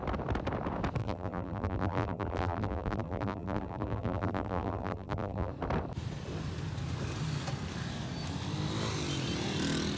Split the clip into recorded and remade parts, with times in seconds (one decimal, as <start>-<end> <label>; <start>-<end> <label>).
0.0-1.0 recorded; 1.0-5.5 remade; 5.5-10.0 recorded